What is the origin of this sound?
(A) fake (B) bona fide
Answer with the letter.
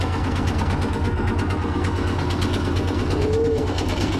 A